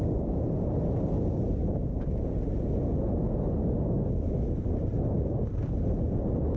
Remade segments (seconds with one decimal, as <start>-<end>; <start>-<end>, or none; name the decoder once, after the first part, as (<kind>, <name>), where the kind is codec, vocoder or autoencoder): none